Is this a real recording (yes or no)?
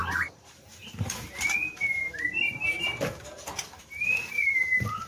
no